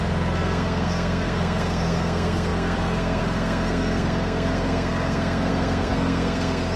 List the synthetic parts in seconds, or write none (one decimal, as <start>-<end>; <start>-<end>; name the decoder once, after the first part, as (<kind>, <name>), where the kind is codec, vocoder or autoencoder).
0.0-6.8 (codec, SNAC)